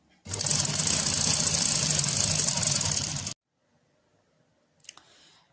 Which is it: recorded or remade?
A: recorded